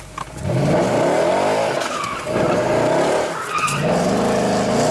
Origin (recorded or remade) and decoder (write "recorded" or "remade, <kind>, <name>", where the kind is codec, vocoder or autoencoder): recorded